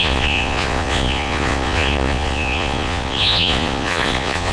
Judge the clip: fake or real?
fake